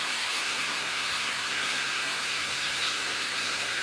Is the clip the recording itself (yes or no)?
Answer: no